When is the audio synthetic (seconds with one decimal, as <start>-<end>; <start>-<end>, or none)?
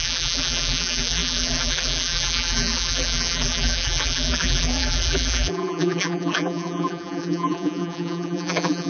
0.0-8.9